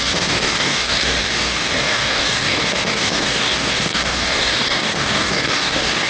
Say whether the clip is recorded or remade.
remade